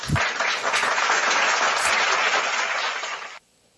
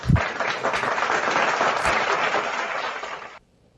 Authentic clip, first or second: second